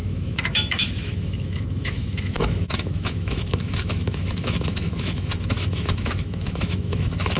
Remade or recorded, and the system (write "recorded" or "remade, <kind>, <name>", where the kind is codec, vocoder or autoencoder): remade, autoencoder, DAC-VAE